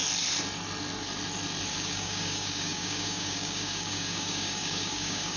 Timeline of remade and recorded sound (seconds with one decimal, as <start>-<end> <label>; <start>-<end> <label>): 0.0-1.7 recorded; 1.7-5.4 remade